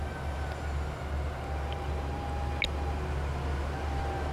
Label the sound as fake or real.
real